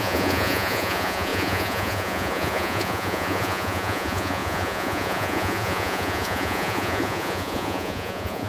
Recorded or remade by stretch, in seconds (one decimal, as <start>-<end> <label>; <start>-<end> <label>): 0.0-8.5 remade

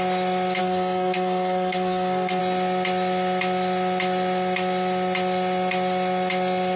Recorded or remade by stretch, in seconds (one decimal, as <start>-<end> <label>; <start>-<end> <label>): 0.0-0.6 recorded; 0.6-2.4 remade; 2.4-6.8 recorded

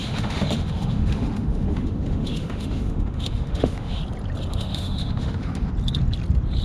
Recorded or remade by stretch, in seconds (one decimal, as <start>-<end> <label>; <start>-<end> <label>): 0.0-4.0 remade; 4.0-4.5 recorded; 4.5-5.7 remade; 5.7-6.6 recorded

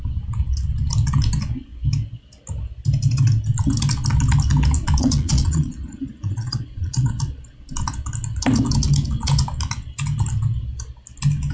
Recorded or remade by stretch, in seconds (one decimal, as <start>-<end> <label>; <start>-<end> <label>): 0.0-5.0 recorded; 5.0-7.1 remade; 7.1-11.5 recorded

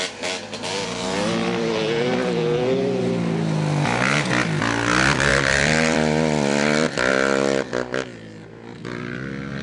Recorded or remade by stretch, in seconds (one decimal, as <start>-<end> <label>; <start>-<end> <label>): 0.0-5.3 recorded; 5.3-7.1 remade; 7.1-9.6 recorded

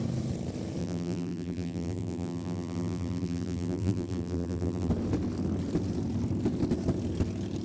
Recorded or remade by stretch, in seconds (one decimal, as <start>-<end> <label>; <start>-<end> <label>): 0.0-0.8 recorded; 0.8-4.9 remade; 4.9-7.6 recorded

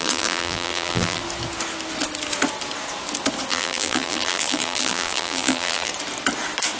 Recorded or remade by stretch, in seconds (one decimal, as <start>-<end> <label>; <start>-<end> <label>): 0.0-1.2 remade; 1.2-3.5 recorded; 3.5-5.9 remade; 5.9-6.8 recorded